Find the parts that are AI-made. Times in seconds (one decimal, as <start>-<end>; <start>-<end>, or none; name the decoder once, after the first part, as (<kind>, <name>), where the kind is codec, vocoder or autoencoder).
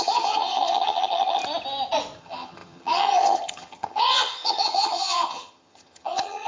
0.0-1.4 (vocoder, HiFi-GAN); 2.2-6.5